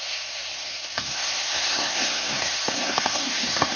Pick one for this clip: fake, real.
fake